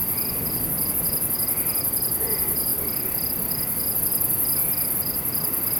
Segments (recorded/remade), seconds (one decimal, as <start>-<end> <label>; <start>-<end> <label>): 0.0-0.9 remade; 0.9-5.8 recorded